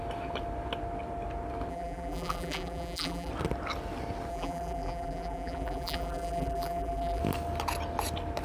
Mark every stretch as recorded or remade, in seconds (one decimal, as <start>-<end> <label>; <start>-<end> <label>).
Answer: 0.0-1.7 recorded; 1.7-3.3 remade; 3.3-4.3 recorded; 4.3-7.2 remade; 7.2-8.4 recorded